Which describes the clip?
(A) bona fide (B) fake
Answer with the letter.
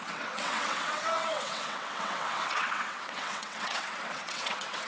B